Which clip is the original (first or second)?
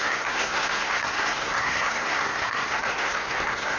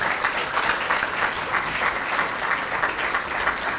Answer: second